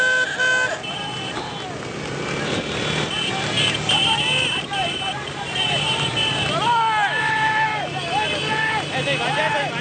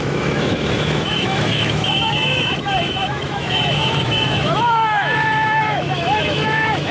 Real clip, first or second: first